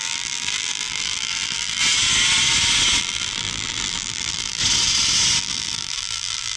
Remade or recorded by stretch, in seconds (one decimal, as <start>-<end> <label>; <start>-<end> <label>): 0.0-1.8 remade; 1.8-3.0 recorded; 3.0-4.6 remade; 4.6-5.4 recorded; 5.4-6.6 remade